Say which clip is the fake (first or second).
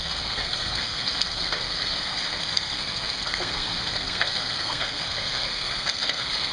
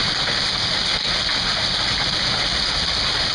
first